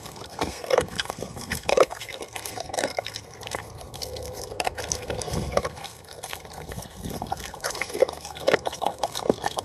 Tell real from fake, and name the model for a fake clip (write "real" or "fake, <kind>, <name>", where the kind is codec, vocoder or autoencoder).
fake, codec, SNAC